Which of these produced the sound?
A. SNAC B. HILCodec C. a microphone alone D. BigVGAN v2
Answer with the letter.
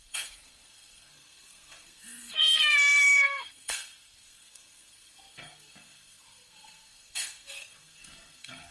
A